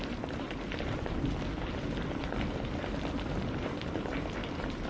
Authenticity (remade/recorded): remade